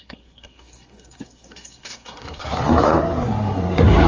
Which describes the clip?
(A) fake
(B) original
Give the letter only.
A